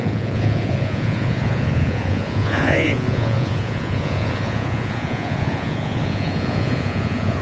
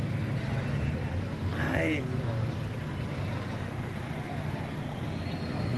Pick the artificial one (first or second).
first